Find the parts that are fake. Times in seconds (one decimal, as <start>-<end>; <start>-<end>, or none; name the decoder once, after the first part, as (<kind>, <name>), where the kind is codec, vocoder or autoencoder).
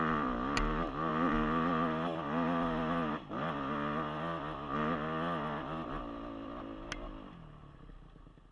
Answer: none